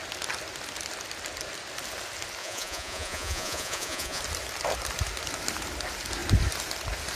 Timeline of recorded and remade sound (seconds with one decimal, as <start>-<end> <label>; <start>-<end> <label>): 0.0-2.4 recorded; 2.4-4.2 remade; 4.2-7.2 recorded